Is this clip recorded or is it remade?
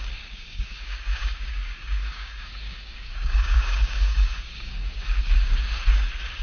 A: remade